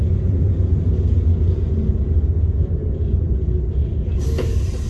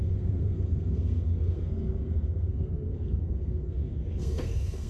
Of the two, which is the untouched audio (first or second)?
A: first